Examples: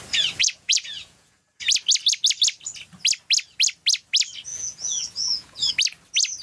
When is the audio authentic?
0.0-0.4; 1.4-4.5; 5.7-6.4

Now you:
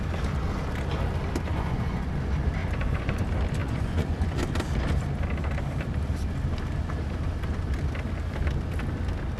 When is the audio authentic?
0.0-1.5; 2.1-2.6; 3.2-3.6; 4.4-9.4

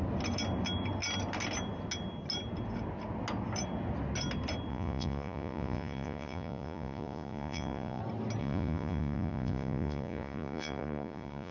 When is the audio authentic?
0.0-4.7; 8.0-8.4

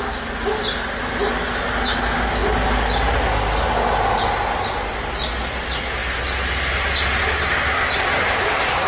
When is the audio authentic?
0.0-8.9

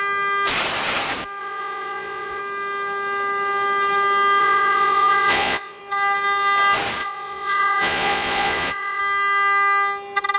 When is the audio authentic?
0.0-1.4; 2.4-4.4; 5.8-7.0; 9.0-10.4

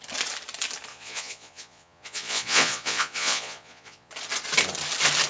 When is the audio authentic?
0.0-0.9; 4.1-5.3

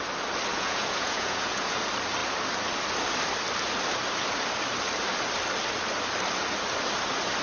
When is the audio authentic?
0.0-0.5; 1.8-7.4

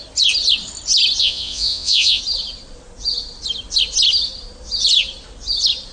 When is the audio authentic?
0.0-1.2; 2.2-5.9